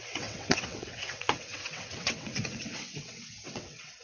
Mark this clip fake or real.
fake